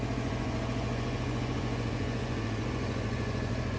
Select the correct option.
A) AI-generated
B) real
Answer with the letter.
A